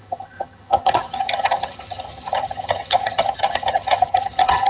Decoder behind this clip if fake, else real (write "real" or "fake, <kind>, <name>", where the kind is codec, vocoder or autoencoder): fake, vocoder, HiFi-GAN